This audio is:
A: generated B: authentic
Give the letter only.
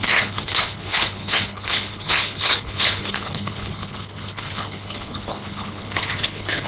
A